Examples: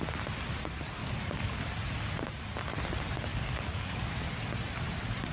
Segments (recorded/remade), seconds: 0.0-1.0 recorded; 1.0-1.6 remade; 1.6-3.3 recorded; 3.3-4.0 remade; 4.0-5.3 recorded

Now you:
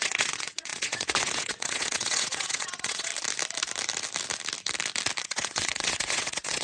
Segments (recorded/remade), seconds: 0.0-3.1 remade; 3.1-5.2 recorded; 5.2-6.6 remade

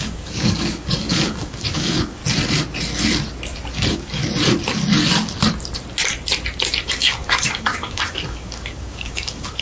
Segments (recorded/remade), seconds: 0.0-2.2 remade; 2.2-3.7 recorded; 3.7-4.2 remade; 4.2-6.8 recorded; 6.8-9.6 remade

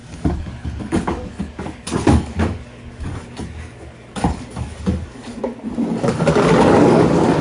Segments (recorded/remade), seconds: 0.0-5.4 remade; 5.4-6.0 recorded; 6.0-7.4 remade

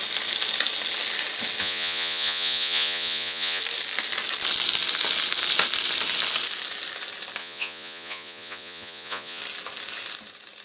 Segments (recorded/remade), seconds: 0.0-1.6 recorded; 1.6-3.6 remade; 3.6-7.4 recorded; 7.4-9.4 remade; 9.4-10.6 recorded